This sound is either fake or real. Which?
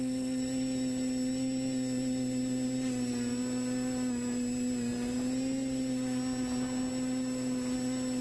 real